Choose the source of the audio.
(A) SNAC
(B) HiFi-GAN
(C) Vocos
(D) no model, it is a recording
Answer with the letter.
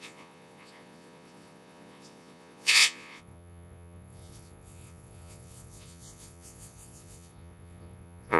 C